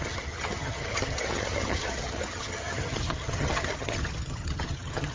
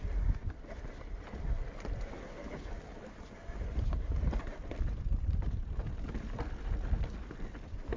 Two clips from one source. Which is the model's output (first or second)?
first